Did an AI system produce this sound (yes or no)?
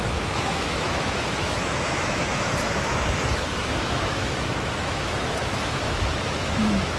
yes